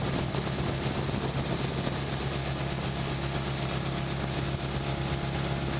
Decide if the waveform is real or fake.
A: real